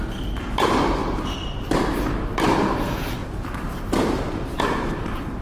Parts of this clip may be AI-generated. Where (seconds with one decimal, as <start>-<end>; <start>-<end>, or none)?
0.0-1.0; 2.2-5.4